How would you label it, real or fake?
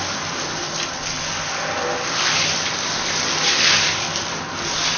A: real